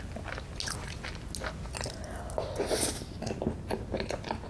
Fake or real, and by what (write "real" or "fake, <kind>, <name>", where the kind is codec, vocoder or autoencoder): real